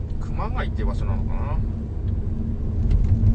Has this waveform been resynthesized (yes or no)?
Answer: no